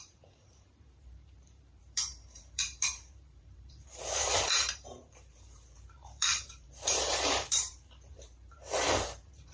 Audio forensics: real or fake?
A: fake